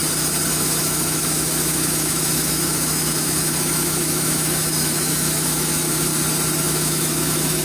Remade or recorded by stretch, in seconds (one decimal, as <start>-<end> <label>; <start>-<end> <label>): 0.0-0.5 recorded; 0.5-6.1 remade; 6.1-6.6 recorded; 6.6-7.6 remade